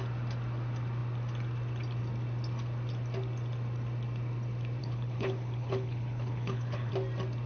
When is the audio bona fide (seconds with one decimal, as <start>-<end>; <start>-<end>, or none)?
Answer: 0.0-4.8; 6.9-7.5